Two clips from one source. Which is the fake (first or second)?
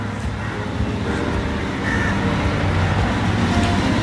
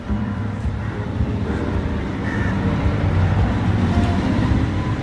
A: second